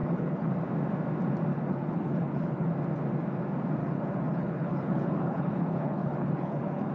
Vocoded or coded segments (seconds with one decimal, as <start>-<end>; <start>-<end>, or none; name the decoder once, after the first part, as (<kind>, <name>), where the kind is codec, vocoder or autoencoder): 0.0-0.5 (codec, HILCodec); 1.5-2.7; 3.8-6.9